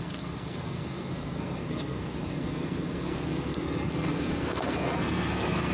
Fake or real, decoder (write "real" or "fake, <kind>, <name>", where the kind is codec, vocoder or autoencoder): fake, codec, SNAC